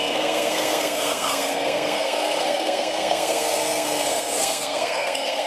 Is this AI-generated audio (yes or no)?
yes